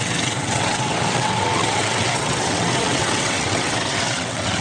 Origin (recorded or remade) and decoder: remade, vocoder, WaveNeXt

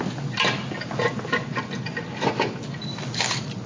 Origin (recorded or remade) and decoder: recorded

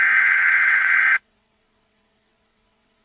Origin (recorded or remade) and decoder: remade, vocoder, WaveNeXt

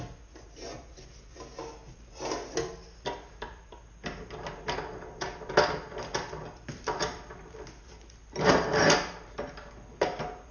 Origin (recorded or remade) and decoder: recorded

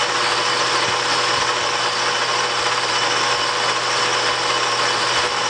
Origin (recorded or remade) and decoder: recorded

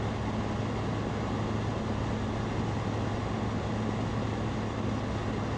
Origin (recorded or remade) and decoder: recorded